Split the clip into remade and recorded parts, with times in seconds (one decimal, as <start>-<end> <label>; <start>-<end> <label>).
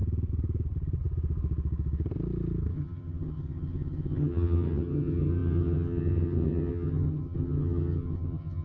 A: 0.0-2.7 recorded; 2.7-8.6 remade